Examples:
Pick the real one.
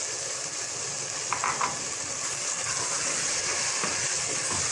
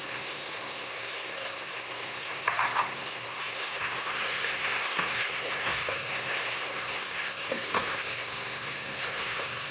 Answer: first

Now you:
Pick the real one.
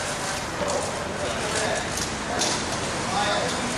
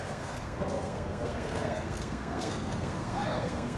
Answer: first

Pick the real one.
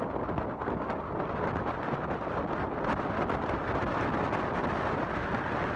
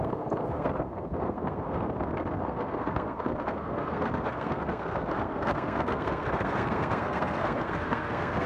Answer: first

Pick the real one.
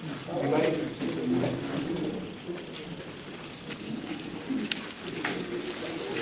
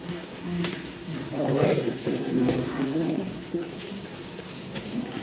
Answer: first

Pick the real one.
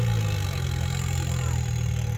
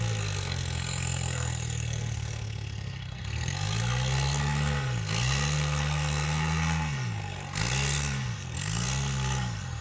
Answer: first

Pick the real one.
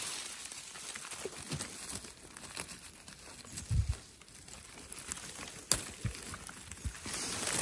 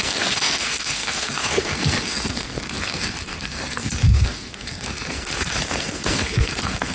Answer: first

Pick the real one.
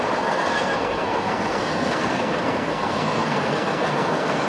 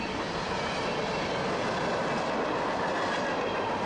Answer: second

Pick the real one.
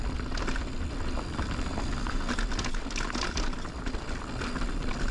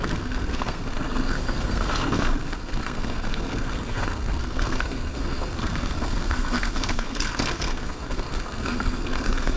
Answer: first